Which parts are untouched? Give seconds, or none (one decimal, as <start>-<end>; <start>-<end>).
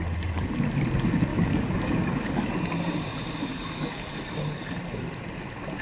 0.0-1.3; 2.5-3.5; 4.7-5.8